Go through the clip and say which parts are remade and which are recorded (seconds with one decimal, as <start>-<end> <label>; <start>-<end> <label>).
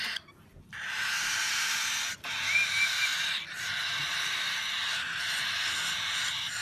0.0-6.6 recorded